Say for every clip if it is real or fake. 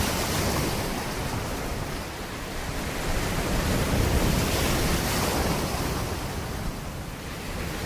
real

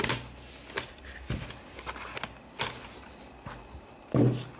real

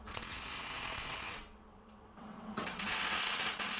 fake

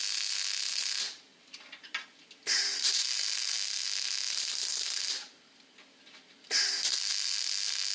real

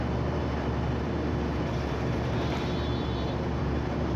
fake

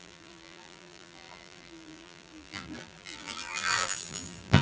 fake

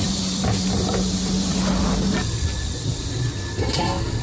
fake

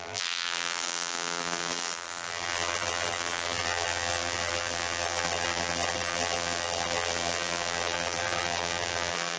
fake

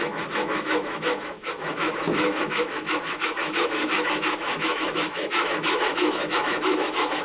fake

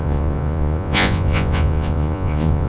fake